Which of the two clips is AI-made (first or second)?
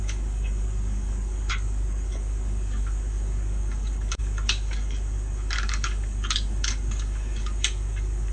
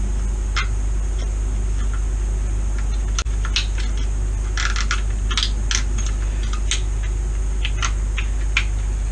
first